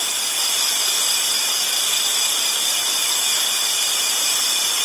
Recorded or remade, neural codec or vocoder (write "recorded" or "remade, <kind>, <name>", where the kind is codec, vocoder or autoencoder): recorded